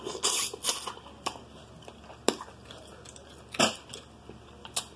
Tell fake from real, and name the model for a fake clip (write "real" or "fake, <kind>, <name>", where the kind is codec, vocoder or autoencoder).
real